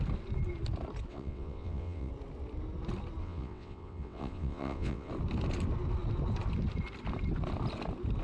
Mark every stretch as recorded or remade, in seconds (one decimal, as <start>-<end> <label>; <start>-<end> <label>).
0.0-1.1 recorded; 1.1-2.1 remade; 2.1-3.2 recorded; 3.2-5.1 remade; 5.1-8.2 recorded